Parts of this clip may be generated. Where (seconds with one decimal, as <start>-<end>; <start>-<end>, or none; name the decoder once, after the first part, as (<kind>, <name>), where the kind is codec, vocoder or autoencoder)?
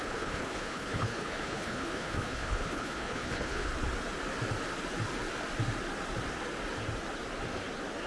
0.0-3.7 (codec, HILCodec)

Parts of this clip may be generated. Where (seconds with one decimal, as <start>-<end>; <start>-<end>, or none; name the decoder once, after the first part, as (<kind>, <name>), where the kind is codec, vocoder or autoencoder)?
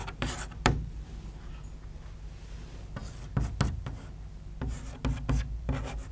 0.0-1.4 (vocoder, BigVGAN v2)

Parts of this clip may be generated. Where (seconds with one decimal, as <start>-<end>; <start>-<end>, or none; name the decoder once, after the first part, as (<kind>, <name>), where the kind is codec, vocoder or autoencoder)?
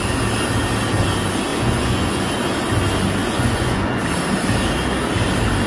1.5-2.3 (vocoder, Vocos); 3.2-4.0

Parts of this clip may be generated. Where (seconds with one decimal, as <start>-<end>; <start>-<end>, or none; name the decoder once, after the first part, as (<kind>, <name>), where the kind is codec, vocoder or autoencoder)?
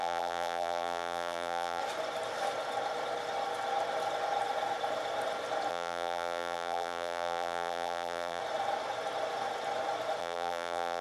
0.0-1.8 (vocoder, BigVGAN v2); 5.7-8.4; 10.2-11.0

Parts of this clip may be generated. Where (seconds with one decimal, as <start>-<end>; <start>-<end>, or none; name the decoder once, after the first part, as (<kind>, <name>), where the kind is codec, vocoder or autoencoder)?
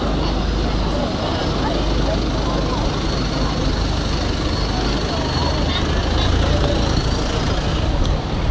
none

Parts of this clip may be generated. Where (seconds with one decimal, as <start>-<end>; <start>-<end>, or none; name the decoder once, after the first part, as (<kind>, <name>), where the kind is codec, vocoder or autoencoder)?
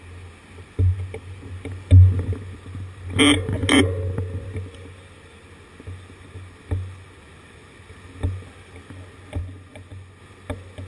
9.4-10.2 (vocoder, Vocos)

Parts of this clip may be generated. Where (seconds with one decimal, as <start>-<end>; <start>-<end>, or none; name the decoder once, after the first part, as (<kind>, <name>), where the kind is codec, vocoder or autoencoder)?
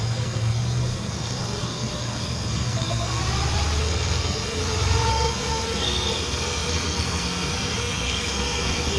0.0-3.2 (codec, SNAC); 3.8-4.6; 5.1-9.0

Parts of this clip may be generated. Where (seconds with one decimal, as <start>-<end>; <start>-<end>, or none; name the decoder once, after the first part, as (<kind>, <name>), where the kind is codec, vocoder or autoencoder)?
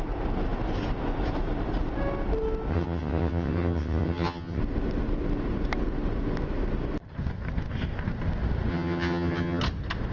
2.7-4.6 (vocoder, HiFi-GAN); 8.7-9.6